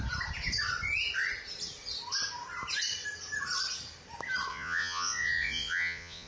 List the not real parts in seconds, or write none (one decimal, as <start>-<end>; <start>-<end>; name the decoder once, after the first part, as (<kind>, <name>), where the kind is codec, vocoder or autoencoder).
4.5-6.3 (vocoder, Vocos)